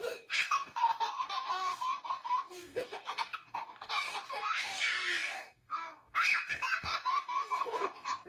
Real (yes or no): no